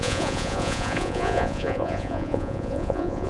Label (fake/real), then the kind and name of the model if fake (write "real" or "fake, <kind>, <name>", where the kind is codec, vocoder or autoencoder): fake, vocoder, Vocos